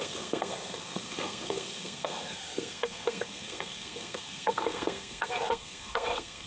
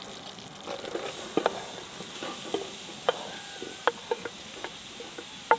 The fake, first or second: first